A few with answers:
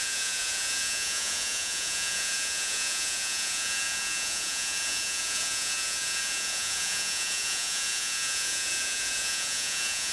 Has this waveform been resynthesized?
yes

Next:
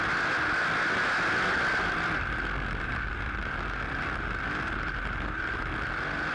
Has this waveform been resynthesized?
no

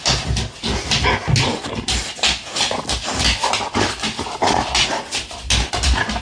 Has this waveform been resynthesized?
no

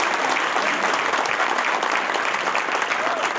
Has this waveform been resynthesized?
no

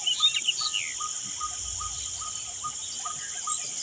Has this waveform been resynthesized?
no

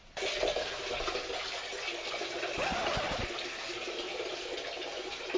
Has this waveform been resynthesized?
no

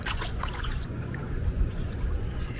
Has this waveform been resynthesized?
yes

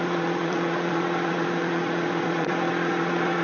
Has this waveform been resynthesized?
yes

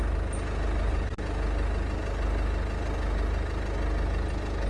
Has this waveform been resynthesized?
no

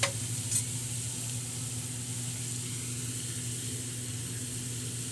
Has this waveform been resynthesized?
no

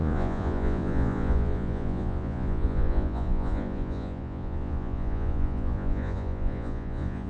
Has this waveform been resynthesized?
yes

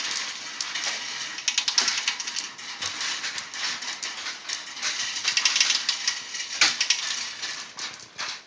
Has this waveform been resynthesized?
no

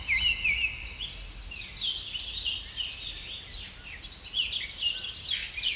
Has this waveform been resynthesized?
no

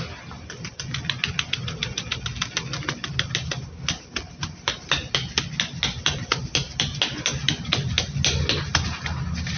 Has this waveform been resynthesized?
no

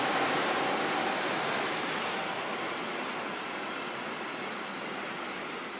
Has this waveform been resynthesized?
no